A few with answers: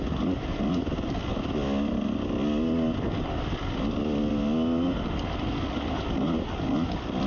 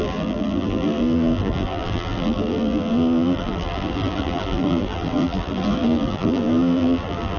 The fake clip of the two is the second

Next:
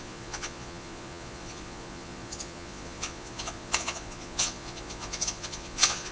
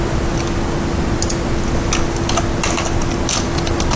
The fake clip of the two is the first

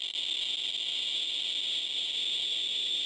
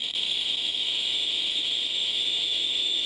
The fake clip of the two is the second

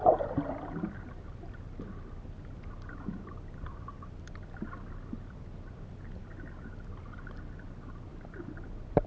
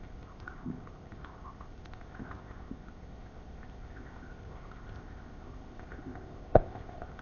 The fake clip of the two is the second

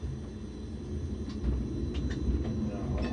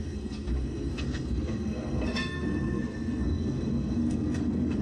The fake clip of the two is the second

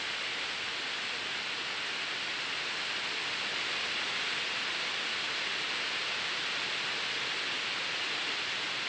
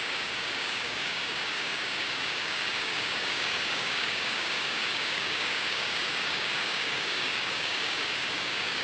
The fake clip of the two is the second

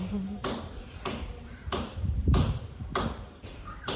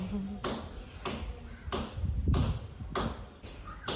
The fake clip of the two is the first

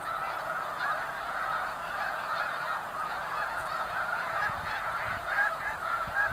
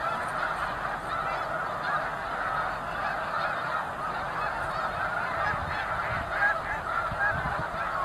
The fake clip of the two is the first